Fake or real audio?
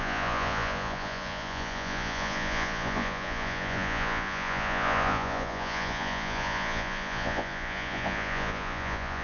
fake